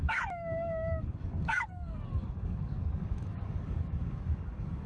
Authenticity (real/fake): fake